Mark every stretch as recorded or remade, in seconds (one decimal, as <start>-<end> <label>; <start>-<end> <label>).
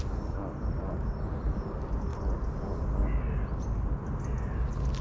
0.0-5.0 recorded